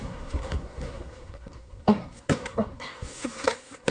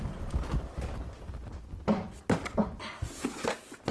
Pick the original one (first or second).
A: second